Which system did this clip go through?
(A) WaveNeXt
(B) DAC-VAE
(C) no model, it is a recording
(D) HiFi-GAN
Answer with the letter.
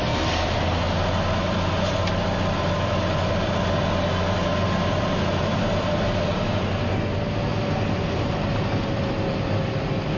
C